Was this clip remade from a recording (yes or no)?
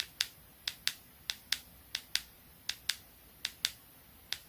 no